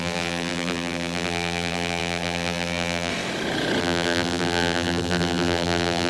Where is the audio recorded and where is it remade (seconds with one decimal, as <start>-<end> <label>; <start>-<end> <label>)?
0.0-3.1 remade; 3.1-3.8 recorded; 3.8-6.1 remade